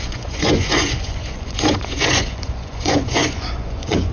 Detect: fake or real fake